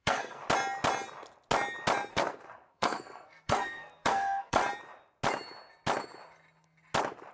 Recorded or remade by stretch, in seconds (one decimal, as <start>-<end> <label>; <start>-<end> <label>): 0.0-0.4 remade; 0.4-2.1 recorded; 2.1-4.6 remade; 4.6-7.3 recorded